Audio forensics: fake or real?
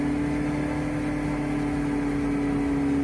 real